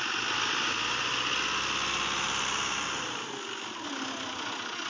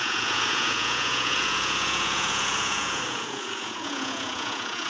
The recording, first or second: first